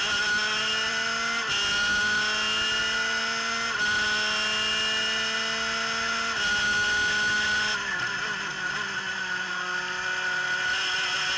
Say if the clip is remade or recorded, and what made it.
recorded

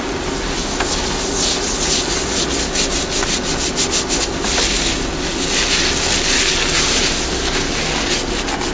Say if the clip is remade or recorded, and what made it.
recorded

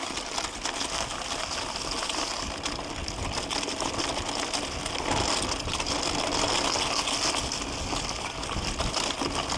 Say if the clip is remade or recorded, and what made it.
recorded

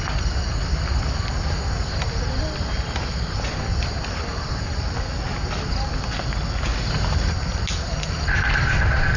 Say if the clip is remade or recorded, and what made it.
recorded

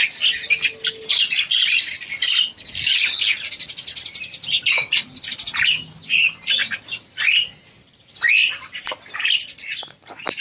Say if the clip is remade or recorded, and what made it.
recorded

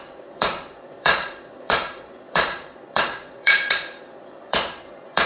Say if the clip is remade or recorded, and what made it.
remade, vocoder, Vocos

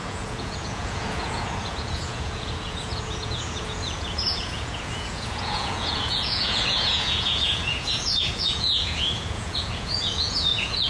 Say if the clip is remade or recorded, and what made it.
remade, vocoder, Vocos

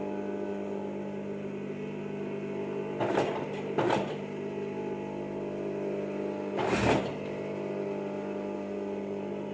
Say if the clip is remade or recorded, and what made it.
recorded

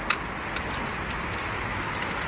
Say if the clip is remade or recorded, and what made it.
recorded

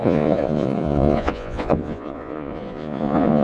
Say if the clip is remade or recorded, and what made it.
remade, vocoder, Vocos